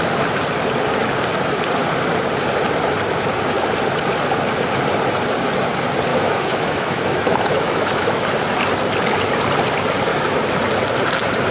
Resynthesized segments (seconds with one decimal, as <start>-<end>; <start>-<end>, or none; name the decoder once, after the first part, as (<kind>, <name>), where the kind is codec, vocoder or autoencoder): 6.1-8.2 (autoencoder, DAC-VAE); 10.1-10.6